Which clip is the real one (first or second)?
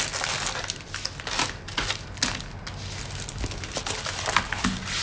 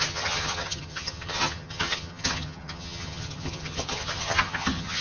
first